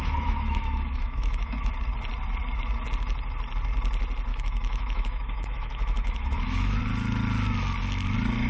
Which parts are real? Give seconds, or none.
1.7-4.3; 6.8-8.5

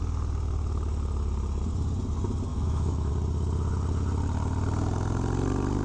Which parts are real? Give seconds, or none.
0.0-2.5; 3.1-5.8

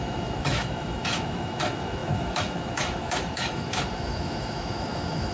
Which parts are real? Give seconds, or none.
none